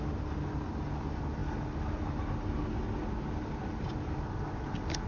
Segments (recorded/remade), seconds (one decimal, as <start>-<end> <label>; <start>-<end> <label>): 0.0-5.1 recorded